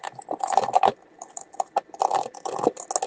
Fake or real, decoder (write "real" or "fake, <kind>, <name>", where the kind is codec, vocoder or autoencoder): real